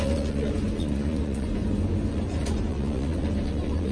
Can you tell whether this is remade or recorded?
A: remade